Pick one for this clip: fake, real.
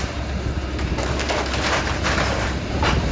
fake